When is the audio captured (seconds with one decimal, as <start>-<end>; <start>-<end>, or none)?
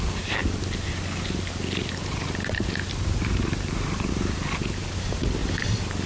0.0-0.4; 4.1-6.1